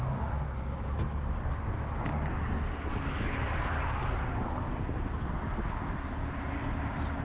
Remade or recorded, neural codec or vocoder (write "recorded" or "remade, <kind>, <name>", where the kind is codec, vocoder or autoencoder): recorded